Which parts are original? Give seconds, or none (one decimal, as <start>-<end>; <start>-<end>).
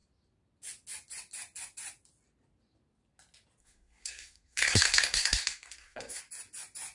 0.0-3.6; 6.2-6.9